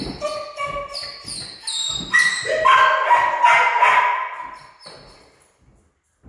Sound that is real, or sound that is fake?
real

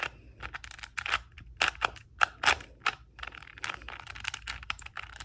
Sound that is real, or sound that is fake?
real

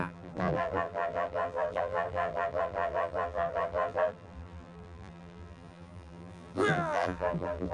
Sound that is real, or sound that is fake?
fake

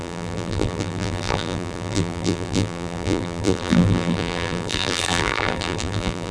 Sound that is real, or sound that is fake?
fake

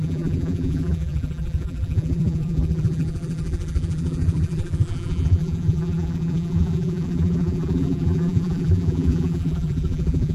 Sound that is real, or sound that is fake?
fake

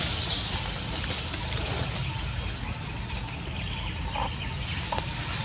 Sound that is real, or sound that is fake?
real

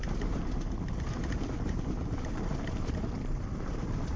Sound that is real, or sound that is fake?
fake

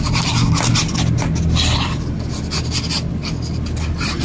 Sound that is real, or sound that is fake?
fake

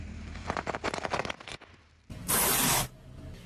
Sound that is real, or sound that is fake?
real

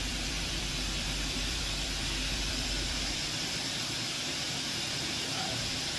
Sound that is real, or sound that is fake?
fake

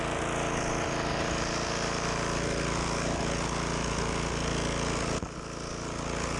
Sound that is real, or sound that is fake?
real